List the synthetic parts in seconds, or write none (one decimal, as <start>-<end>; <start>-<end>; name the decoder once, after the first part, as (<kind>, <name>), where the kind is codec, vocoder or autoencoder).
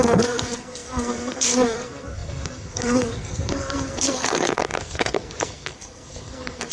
0.0-6.7 (codec, SNAC)